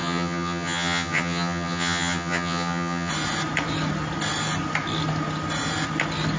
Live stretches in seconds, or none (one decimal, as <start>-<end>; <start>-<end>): 3.1-6.4